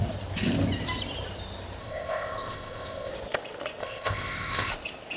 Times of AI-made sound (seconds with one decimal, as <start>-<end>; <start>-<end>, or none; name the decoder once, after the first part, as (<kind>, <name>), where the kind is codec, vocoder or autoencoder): 1.8-3.1 (codec, ZipCodec); 3.8-4.7